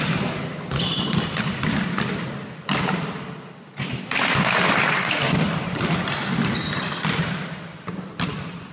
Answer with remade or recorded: recorded